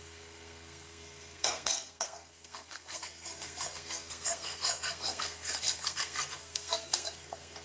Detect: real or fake fake